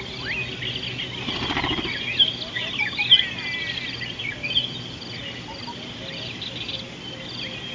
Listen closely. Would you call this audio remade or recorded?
recorded